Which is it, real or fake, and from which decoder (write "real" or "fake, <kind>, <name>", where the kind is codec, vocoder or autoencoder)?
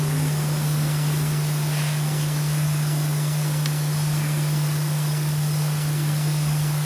fake, codec, SNAC